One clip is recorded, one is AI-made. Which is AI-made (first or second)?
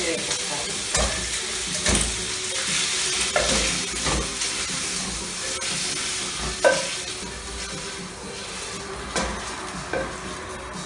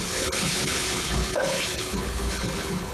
second